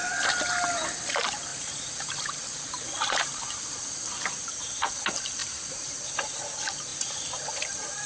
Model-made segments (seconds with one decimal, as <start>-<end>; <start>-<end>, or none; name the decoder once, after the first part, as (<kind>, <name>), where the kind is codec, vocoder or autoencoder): 1.5-4.3 (vocoder, BigVGAN v2); 5.4-6.1; 6.9-8.1